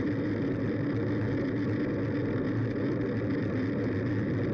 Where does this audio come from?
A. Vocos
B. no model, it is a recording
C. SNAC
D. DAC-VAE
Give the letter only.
B